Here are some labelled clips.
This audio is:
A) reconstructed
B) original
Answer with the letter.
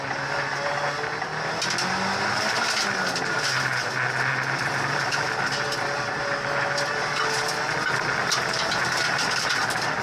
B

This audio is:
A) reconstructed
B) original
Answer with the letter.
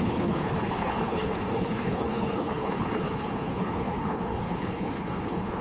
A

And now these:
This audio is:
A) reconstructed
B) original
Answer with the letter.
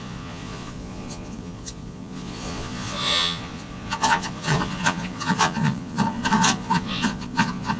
A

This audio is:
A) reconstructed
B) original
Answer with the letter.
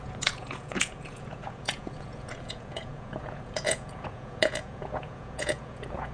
A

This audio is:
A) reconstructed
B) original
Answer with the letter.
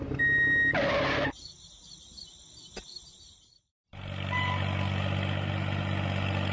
B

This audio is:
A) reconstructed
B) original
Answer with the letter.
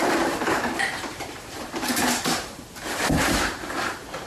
A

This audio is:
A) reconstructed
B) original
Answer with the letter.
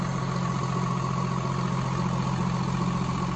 B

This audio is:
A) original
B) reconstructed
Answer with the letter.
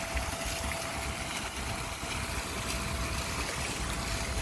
A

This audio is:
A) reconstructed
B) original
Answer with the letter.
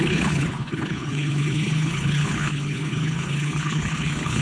A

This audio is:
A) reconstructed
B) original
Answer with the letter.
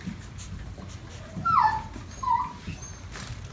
B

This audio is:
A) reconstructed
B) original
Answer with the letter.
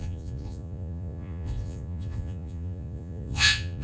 A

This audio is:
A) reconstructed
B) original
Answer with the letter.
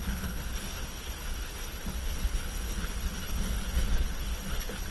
A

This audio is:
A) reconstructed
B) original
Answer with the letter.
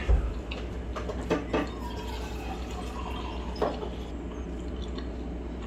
B